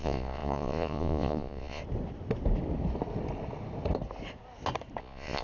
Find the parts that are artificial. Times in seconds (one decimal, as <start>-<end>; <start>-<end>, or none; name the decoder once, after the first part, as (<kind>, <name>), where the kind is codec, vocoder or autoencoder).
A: 0.0-1.8 (vocoder, Vocos); 5.0-5.4